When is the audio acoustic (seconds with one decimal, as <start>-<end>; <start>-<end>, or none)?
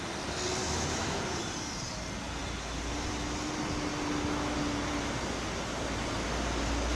0.0-0.6; 1.2-6.9